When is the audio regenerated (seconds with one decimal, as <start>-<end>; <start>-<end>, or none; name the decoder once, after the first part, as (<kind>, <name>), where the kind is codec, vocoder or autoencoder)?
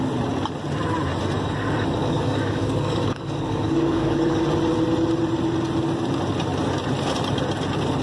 2.0-4.4 (codec, DAC)